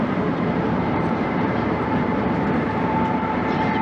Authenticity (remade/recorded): remade